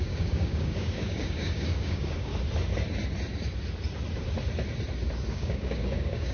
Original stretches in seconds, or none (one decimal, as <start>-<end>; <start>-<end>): 2.3-5.3